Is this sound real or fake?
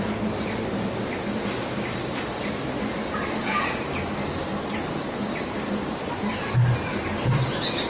fake